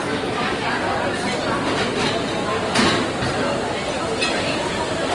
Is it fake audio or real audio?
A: real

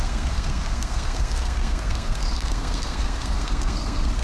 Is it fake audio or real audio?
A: fake